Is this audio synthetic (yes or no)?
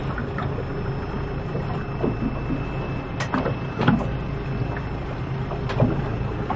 no